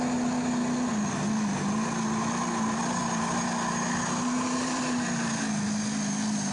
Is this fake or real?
real